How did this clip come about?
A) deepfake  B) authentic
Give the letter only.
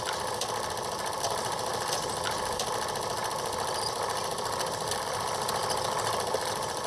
B